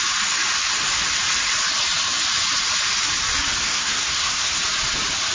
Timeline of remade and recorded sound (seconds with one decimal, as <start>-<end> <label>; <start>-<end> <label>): 0.0-3.6 recorded; 3.6-4.6 remade; 4.6-5.3 recorded